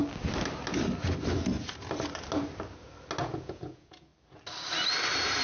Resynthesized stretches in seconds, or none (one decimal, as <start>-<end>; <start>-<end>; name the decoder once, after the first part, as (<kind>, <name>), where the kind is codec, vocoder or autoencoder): 3.2-4.1 (vocoder, Vocos)